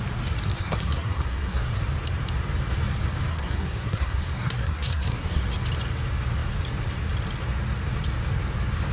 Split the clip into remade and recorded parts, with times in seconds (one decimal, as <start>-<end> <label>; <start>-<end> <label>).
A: 0.0-0.5 recorded; 0.5-1.7 remade; 1.7-3.3 recorded; 3.3-5.4 remade; 5.4-8.9 recorded